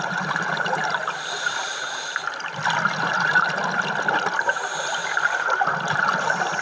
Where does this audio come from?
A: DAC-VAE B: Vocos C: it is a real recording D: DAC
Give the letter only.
C